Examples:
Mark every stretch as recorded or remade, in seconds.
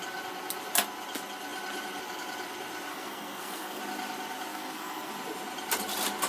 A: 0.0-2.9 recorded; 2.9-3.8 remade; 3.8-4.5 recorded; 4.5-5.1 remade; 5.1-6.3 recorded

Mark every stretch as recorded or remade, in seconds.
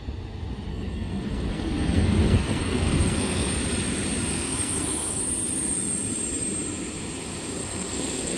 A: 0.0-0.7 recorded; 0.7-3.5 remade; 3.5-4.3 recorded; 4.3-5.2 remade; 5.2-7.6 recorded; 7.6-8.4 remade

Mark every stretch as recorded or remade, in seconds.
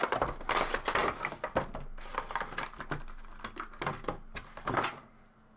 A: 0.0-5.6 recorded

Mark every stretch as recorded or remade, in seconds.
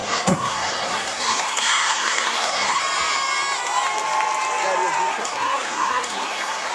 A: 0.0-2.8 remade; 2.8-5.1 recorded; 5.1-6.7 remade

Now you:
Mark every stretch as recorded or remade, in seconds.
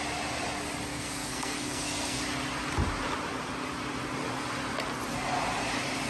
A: 0.0-0.9 recorded; 0.9-2.2 remade; 2.2-6.1 recorded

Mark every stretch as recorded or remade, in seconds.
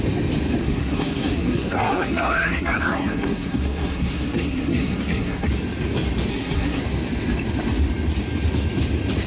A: 0.0-0.6 recorded; 0.6-5.5 remade; 5.5-6.3 recorded; 6.3-6.8 remade; 6.8-9.3 recorded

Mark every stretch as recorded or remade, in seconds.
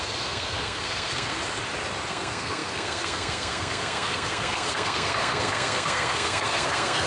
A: 0.0-1.4 remade; 1.4-2.1 recorded; 2.1-7.1 remade